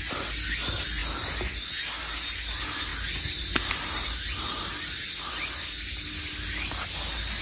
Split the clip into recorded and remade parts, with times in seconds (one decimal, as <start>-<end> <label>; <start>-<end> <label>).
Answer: 0.0-7.4 recorded